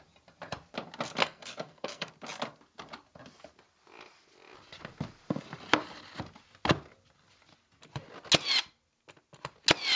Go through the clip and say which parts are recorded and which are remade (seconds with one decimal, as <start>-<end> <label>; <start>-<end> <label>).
0.0-1.2 recorded; 1.2-2.1 remade; 2.1-10.0 recorded